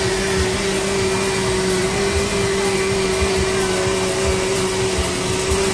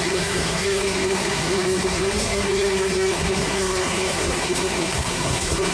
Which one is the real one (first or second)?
first